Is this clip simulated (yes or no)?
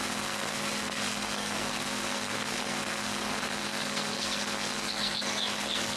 yes